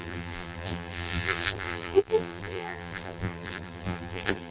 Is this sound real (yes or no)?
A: no